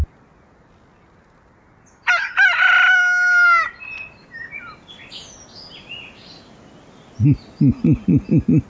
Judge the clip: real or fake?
real